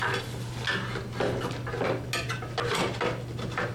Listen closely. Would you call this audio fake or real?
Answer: real